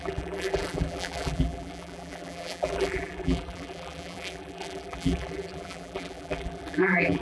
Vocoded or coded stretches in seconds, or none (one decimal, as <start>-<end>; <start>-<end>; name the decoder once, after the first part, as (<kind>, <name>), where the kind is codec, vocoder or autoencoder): 0.0-7.2 (vocoder, BigVGAN v2)